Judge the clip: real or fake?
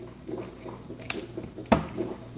real